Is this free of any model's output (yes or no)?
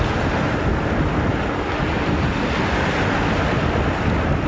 yes